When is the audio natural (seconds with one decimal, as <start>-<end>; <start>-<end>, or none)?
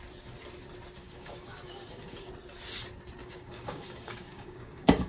0.0-1.0; 2.3-3.2